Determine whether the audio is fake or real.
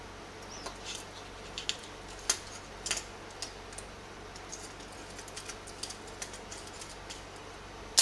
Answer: real